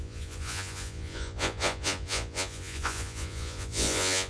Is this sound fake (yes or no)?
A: yes